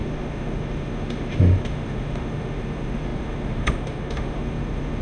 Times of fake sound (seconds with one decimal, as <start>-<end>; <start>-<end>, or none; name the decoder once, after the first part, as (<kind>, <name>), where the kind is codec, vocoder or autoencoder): 0.0-5.0 (autoencoder, DAC-VAE)